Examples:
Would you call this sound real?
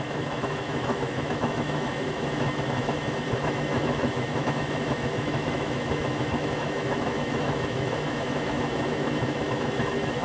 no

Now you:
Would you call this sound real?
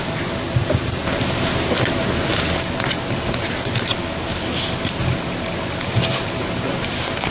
yes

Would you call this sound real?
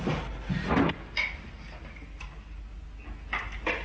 yes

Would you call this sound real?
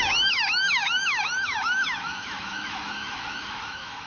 no